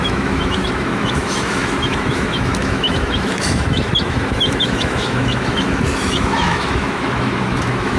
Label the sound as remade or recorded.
remade